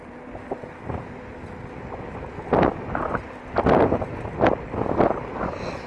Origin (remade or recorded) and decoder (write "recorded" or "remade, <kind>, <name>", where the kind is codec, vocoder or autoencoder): recorded